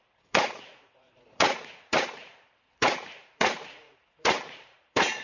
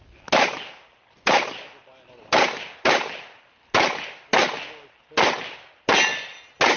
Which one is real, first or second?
second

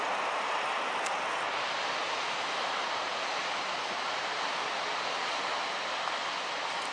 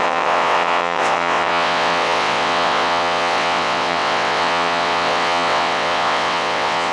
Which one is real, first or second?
first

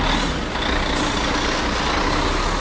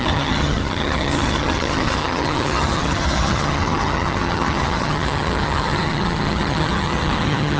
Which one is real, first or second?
first